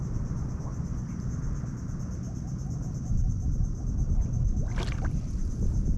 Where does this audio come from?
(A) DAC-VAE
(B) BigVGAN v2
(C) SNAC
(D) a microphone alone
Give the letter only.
D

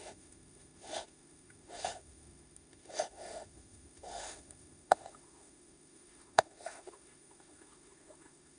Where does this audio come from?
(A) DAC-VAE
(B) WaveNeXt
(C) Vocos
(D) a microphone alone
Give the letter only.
A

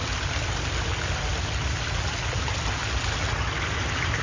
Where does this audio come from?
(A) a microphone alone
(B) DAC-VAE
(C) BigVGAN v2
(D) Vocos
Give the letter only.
A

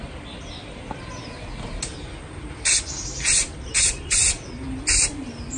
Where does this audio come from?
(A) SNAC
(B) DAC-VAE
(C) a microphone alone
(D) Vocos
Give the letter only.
C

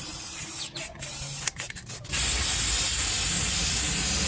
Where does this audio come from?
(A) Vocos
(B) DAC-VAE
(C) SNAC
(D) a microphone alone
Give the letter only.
D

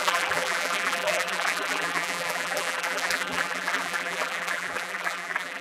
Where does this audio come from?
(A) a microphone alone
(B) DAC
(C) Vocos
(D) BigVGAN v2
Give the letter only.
D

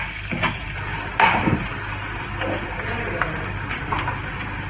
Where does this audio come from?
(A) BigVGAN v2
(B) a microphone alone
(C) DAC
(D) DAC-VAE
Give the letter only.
B